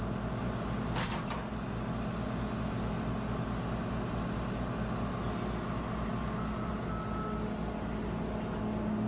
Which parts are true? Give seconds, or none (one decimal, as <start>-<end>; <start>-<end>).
0.0-9.1